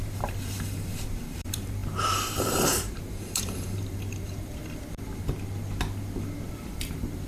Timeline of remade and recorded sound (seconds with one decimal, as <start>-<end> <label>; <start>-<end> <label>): 0.0-4.6 remade; 4.6-6.5 recorded; 6.5-7.3 remade